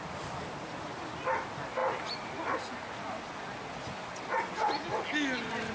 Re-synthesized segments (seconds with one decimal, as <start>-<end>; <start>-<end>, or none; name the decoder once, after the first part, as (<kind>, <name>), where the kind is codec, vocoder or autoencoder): none